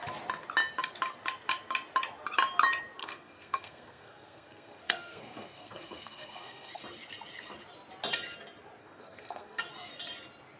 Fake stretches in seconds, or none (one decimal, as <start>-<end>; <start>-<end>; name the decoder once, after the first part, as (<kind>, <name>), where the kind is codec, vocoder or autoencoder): 3.0-6.8 (codec, SNAC); 8.8-9.7